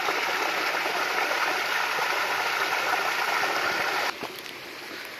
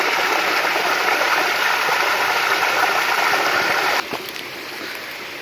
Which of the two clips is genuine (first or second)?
first